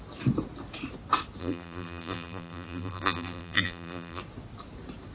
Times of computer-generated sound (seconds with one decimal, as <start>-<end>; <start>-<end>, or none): 1.4-4.2